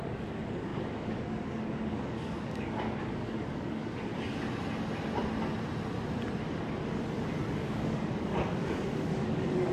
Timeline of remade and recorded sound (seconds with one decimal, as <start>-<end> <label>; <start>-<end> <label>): 0.0-4.1 remade; 4.1-7.5 recorded; 7.5-9.7 remade